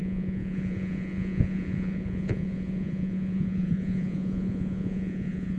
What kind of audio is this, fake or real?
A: fake